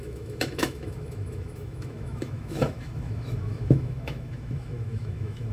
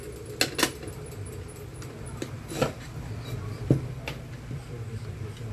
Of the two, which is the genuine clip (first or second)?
second